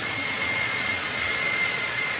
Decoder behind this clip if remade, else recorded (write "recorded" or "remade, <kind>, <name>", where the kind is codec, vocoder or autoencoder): remade, vocoder, Vocos